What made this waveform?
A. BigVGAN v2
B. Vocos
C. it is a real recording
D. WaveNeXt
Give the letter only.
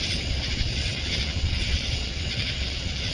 D